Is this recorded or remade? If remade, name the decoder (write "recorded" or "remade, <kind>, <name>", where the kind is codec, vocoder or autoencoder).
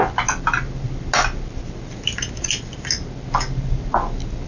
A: recorded